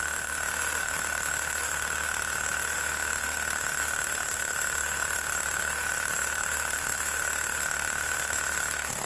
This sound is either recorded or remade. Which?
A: remade